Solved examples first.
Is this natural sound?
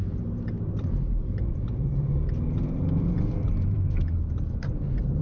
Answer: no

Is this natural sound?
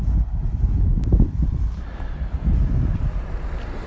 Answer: yes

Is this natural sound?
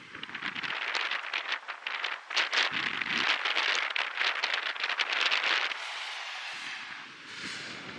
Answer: yes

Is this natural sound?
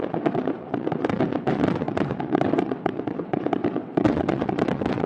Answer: no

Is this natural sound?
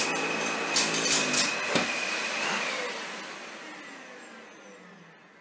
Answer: yes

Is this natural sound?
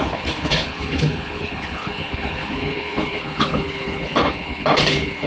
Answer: no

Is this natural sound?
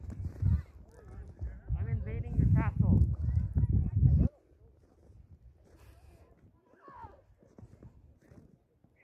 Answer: yes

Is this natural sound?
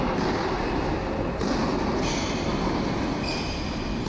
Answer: yes